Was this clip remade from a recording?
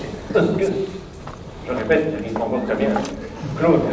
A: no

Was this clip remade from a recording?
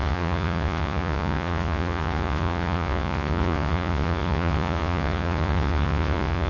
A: yes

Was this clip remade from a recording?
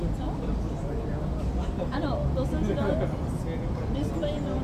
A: no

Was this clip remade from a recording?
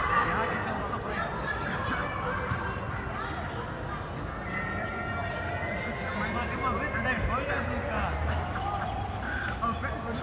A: no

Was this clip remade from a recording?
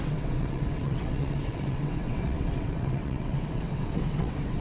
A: yes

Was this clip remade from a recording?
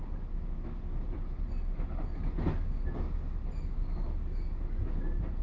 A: no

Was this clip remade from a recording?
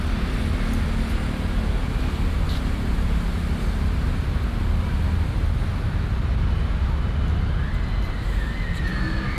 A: no